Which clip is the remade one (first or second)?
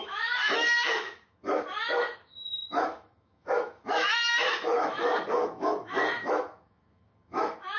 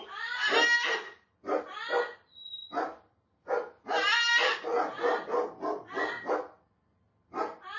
first